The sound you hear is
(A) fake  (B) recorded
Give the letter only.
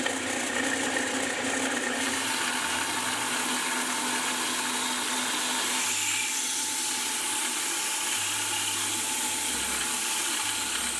B